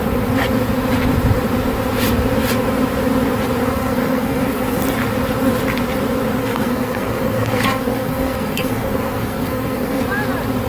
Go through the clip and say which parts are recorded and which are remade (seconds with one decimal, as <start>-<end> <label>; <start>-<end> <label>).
0.0-3.6 recorded; 3.6-4.8 remade; 4.8-6.4 recorded; 6.4-10.0 remade; 10.0-10.7 recorded